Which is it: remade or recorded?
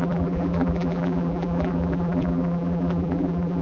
remade